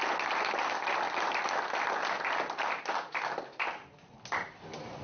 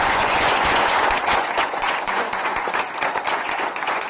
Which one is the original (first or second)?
first